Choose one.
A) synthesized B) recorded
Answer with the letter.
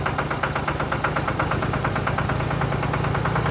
B